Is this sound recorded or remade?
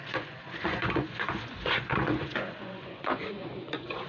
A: remade